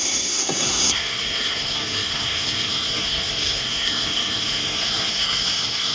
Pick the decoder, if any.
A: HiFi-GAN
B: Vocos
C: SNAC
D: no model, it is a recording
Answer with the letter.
C